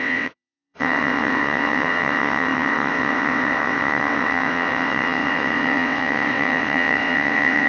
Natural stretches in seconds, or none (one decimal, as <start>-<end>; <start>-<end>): none